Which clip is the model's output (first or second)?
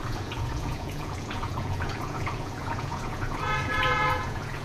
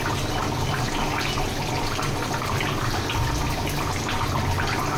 first